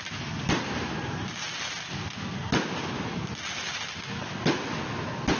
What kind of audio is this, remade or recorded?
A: recorded